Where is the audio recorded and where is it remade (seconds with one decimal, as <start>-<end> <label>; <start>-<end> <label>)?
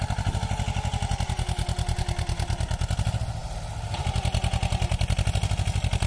0.0-6.1 recorded